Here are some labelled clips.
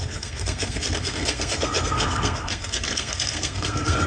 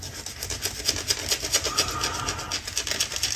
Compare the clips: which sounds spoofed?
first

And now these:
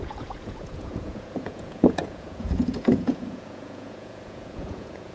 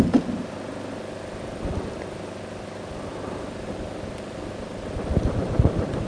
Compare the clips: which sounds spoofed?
first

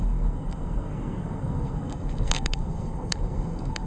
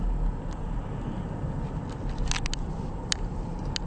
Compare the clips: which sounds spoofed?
first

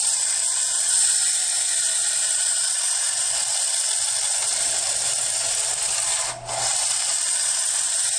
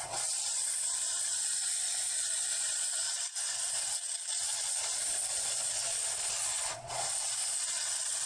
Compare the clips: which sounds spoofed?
second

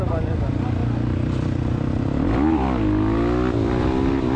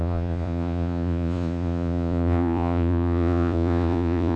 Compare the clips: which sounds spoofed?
second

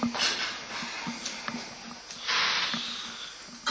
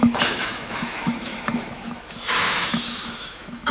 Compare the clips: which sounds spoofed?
second